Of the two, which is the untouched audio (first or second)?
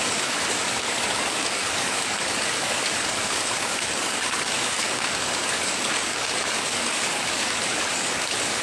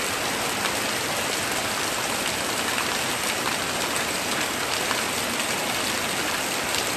second